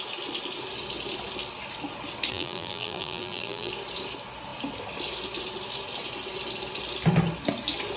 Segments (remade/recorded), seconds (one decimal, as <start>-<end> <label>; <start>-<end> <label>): 0.0-2.3 recorded; 2.3-3.7 remade; 3.7-8.0 recorded

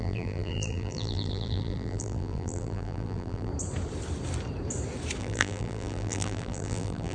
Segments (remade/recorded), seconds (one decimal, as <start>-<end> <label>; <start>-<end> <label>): 0.0-3.5 remade; 3.5-5.2 recorded; 5.2-7.1 remade

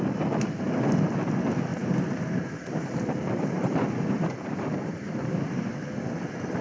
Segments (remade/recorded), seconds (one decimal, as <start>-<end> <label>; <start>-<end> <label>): 0.0-1.7 recorded; 1.7-5.7 remade; 5.7-6.6 recorded

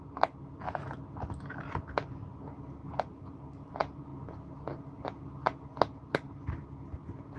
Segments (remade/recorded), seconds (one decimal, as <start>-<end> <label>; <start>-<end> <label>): 0.0-2.8 recorded; 2.8-3.5 remade; 3.5-7.4 recorded